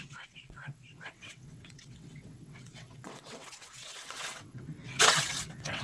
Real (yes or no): no